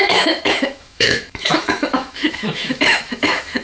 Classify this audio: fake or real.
fake